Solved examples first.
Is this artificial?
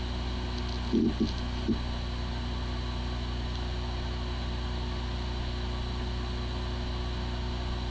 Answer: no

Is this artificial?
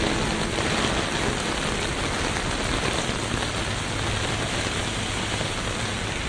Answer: no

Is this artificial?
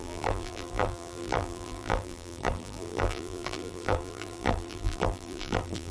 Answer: yes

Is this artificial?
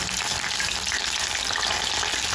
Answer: no